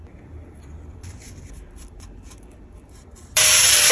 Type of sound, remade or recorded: remade